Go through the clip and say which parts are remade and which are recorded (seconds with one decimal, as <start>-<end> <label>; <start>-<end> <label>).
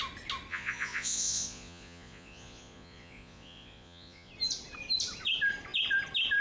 0.0-0.5 recorded; 0.5-4.3 remade; 4.3-6.4 recorded